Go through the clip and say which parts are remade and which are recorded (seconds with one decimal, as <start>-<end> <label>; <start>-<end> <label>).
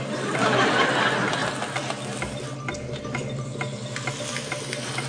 0.0-5.1 recorded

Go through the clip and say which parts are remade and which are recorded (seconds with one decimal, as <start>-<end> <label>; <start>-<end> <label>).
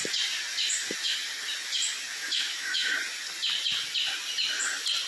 0.0-2.1 recorded; 2.1-2.9 remade; 2.9-5.1 recorded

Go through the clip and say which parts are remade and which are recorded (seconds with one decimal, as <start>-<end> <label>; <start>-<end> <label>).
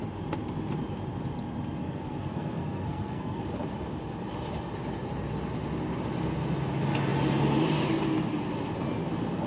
0.0-1.8 recorded; 1.8-3.4 remade; 3.4-9.5 recorded